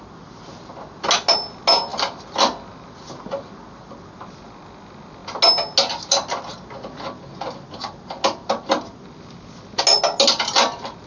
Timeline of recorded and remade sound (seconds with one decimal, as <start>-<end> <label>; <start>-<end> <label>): 0.0-11.1 recorded